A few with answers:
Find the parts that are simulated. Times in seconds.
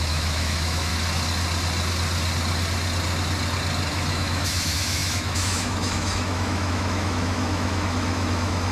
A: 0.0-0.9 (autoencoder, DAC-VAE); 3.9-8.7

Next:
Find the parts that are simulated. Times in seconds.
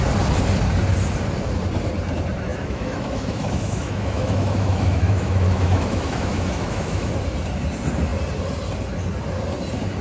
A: 2.5-7.1 (autoencoder, DAC-VAE)